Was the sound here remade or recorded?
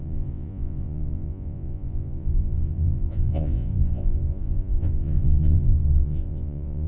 remade